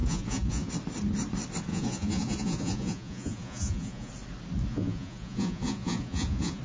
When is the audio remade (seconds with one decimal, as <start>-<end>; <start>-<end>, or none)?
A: 0.0-0.7; 1.7-4.1; 4.7-6.6

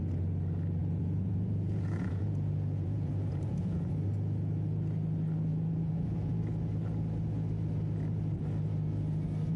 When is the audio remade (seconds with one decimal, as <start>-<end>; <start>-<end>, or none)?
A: 0.8-3.9; 5.5-6.4

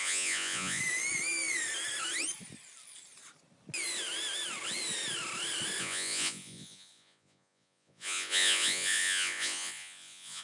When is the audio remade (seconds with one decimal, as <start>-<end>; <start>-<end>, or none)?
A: 0.0-0.8; 5.8-10.4

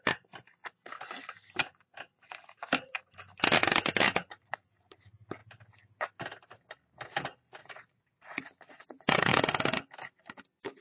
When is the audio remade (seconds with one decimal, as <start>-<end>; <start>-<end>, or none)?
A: 4.2-4.8; 7.6-9.4